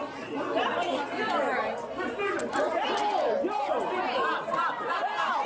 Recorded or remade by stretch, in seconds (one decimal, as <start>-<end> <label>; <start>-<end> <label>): 0.0-5.5 recorded